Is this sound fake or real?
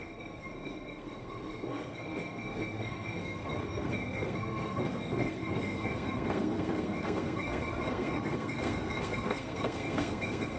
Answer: fake